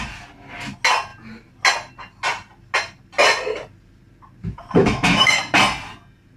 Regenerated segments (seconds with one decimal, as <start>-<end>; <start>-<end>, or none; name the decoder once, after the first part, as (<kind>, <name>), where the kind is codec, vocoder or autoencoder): 4.8-5.4 (autoencoder, DAC-VAE)